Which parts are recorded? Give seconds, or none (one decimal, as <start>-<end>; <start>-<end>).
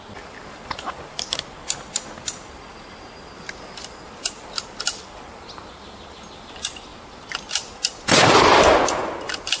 0.0-9.6